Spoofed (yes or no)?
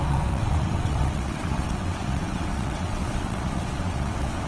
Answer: yes